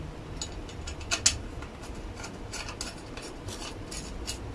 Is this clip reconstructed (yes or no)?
no